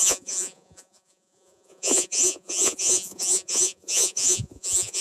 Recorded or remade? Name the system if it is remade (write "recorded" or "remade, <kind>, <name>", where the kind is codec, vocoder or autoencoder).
remade, vocoder, Vocos